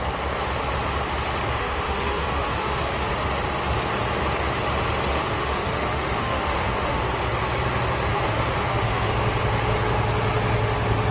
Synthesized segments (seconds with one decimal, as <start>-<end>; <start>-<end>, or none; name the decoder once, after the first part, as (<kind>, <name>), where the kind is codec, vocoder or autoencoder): 1.6-2.9 (autoencoder, DAC-VAE); 5.1-7.0; 8.1-9.1

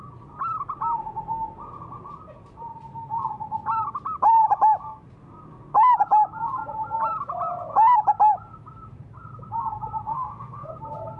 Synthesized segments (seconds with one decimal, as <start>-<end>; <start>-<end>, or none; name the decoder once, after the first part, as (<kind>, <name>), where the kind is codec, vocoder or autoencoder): 10.1-10.7 (autoencoder, DAC-VAE)